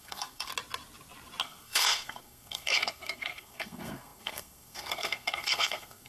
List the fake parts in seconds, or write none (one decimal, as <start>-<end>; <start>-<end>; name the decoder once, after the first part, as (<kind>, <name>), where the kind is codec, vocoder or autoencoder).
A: 0.0-0.5 (codec, SNAC); 1.4-6.1